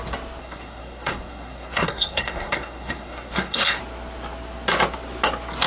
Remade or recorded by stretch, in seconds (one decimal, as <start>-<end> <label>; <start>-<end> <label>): 0.0-0.4 recorded; 0.4-3.8 remade; 3.8-5.7 recorded